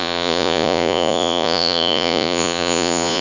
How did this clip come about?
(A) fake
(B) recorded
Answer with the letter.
A